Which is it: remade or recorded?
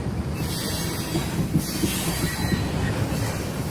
recorded